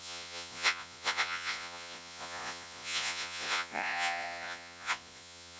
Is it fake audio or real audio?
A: fake